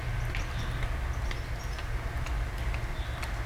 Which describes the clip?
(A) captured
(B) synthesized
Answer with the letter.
A